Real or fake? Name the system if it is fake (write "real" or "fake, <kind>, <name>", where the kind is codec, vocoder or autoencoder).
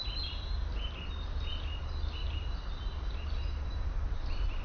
real